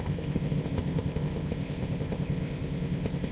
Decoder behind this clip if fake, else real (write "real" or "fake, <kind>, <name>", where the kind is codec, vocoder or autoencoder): fake, codec, ZipCodec